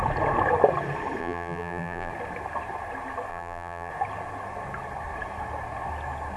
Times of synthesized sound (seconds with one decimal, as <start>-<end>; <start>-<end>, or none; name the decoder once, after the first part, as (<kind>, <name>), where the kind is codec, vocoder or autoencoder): 1.2-2.1 (vocoder, BigVGAN v2); 3.3-3.9